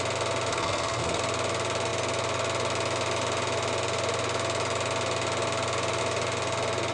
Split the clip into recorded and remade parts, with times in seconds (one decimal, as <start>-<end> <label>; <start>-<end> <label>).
0.0-0.5 recorded; 0.5-1.2 remade; 1.2-6.9 recorded